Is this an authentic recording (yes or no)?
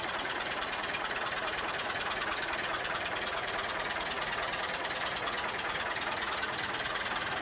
no